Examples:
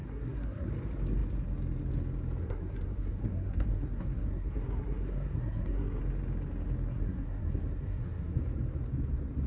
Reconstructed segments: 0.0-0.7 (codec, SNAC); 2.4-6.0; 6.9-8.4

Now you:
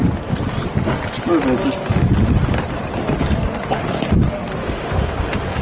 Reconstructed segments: 4.6-5.6 (autoencoder, DAC-VAE)

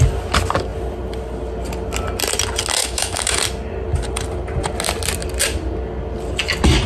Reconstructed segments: 2.8-3.4 (autoencoder, DAC-VAE)

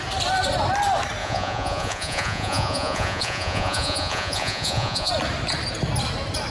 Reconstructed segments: 1.2-5.1 (vocoder, Vocos)

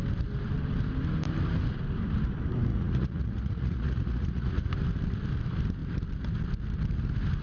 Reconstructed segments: 2.7-4.7 (vocoder, Vocos)

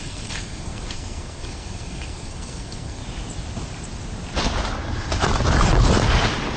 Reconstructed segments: 0.0-3.0 (codec, SNAC)

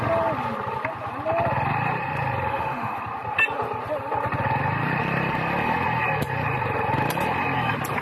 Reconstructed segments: 2.5-3.0 (autoencoder, DAC-VAE)

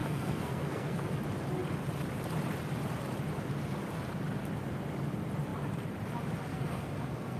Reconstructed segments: 0.0-1.1 (codec, SNAC); 6.5-7.4